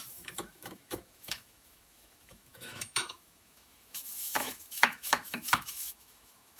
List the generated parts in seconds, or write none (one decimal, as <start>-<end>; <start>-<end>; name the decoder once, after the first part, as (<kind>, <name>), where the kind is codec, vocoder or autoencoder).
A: 0.0-6.6 (autoencoder, DAC-VAE)